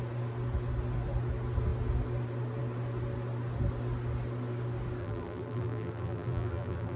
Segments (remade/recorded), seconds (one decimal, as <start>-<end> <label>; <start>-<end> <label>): 0.0-5.0 recorded; 5.0-7.0 remade